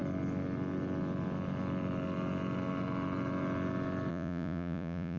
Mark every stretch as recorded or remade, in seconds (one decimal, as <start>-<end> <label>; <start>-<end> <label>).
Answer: 0.0-4.1 recorded; 4.1-5.2 remade